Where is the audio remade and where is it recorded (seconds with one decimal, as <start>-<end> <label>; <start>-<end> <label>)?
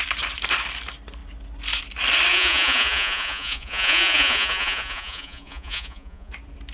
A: 0.0-2.3 recorded; 2.3-6.3 remade; 6.3-6.7 recorded